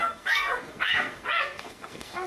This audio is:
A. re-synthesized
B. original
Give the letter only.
A